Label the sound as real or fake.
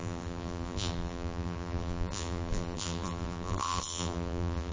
fake